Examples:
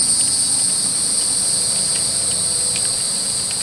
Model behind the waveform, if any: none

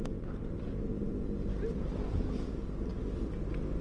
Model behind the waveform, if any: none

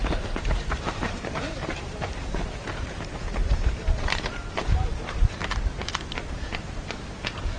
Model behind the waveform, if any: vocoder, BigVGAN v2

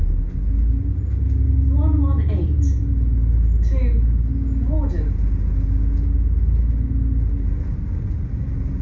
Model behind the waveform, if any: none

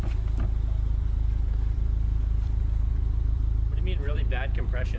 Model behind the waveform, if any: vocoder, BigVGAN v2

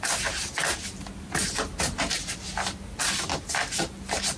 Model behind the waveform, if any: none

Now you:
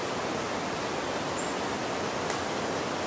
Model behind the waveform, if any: none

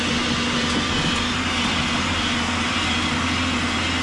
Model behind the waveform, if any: none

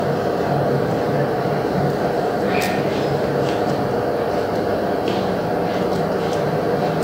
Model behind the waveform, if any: none